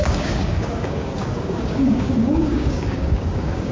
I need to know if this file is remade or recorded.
remade